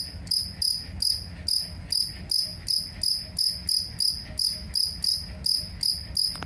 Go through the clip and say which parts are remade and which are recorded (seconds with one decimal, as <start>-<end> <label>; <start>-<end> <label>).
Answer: 0.0-6.5 recorded